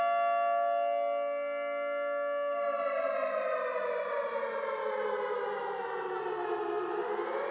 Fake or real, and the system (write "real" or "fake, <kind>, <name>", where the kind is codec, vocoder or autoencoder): real